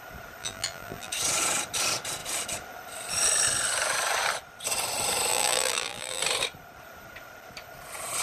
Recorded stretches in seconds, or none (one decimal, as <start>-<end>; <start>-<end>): 0.0-0.4; 1.1-5.3; 6.2-8.2